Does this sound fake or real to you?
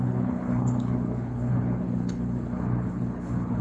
fake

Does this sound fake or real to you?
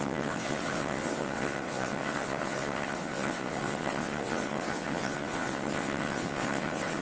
fake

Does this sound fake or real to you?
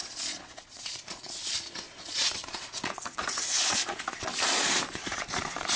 fake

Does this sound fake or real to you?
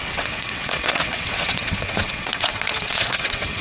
fake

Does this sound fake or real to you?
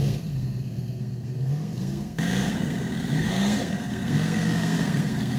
fake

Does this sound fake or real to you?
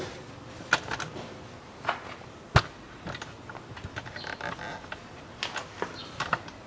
real